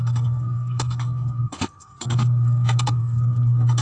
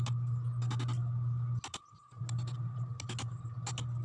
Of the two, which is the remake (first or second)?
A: first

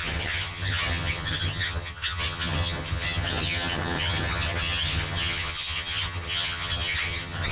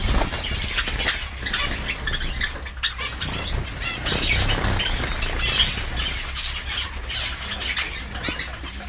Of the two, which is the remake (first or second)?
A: first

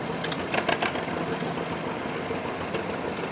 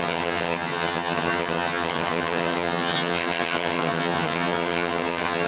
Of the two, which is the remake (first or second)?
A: second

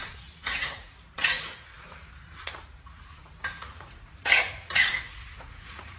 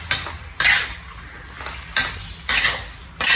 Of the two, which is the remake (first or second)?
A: first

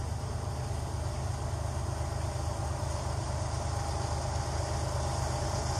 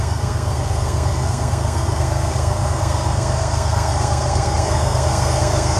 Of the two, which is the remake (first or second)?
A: second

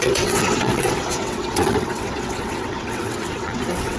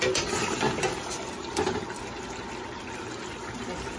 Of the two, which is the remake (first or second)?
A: first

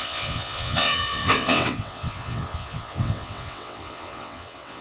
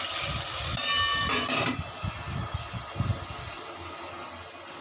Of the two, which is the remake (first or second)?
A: first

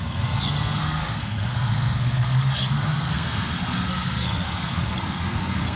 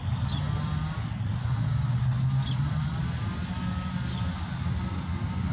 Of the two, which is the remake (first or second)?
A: first